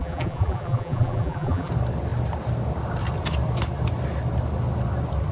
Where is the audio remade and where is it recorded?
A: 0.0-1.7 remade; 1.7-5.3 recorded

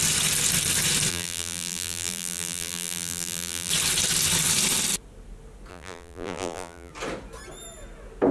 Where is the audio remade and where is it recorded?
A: 0.0-1.1 recorded; 1.1-3.7 remade; 3.7-5.7 recorded; 5.7-6.9 remade; 6.9-8.3 recorded

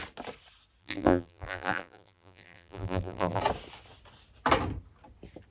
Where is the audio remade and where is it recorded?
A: 0.0-0.8 recorded; 0.8-3.4 remade; 3.4-5.5 recorded

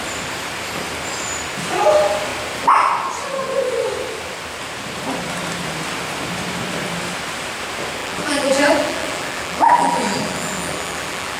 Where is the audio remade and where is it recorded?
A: 0.0-8.0 recorded; 8.0-11.4 remade

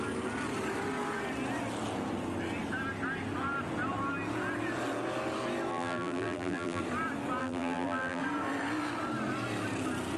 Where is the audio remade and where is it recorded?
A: 0.0-5.7 recorded; 5.7-6.8 remade; 6.8-7.4 recorded; 7.4-8.2 remade; 8.2-10.2 recorded

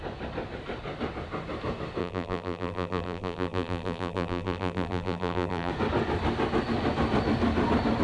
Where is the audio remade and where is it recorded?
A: 0.0-2.0 recorded; 2.0-5.7 remade; 5.7-8.0 recorded

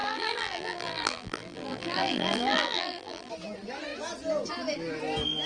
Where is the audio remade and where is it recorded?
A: 0.0-3.3 remade; 3.3-5.5 recorded

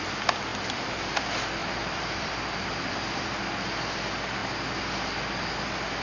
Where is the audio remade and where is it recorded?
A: 0.0-0.5 recorded; 0.5-1.2 remade; 1.2-1.6 recorded; 1.6-3.5 remade; 3.5-6.0 recorded